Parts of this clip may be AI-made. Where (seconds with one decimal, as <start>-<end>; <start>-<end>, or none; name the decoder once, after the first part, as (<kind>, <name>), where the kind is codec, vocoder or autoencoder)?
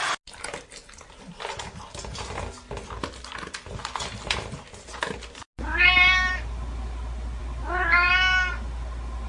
none